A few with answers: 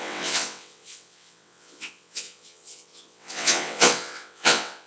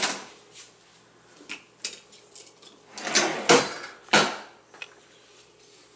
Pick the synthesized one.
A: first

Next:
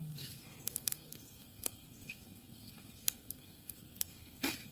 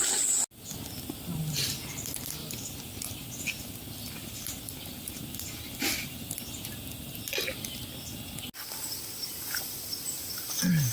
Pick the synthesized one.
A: first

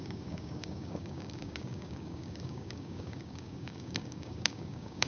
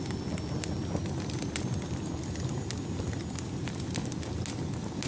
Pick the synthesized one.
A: first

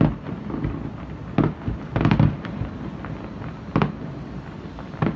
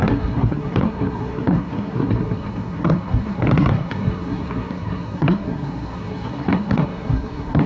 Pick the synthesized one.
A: second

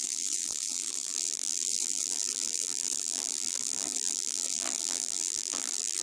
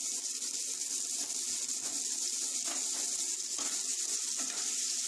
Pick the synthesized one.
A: first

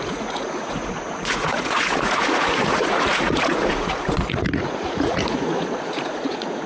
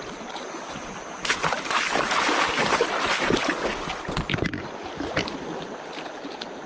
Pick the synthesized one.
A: first